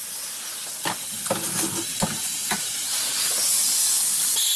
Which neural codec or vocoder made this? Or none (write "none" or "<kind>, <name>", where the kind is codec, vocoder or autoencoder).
none